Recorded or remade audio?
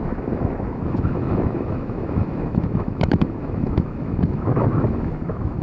remade